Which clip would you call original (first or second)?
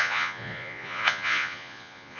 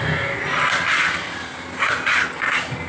second